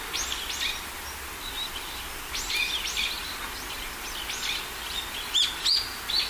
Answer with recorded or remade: recorded